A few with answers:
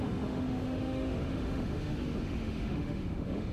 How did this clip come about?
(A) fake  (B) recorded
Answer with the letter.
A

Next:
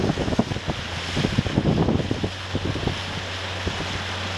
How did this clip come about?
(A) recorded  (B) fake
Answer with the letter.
A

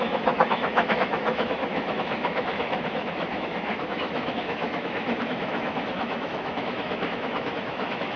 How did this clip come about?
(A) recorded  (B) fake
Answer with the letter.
B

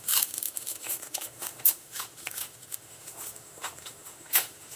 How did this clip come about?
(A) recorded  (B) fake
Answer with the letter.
B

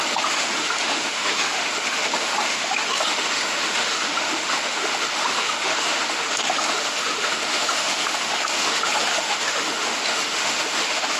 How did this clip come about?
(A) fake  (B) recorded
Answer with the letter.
A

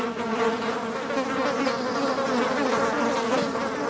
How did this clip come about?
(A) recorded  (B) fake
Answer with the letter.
A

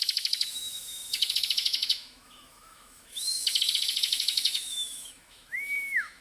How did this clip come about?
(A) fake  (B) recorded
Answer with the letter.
A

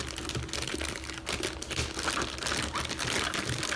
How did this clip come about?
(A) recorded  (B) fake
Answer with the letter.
A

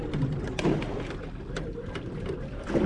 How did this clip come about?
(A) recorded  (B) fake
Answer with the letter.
A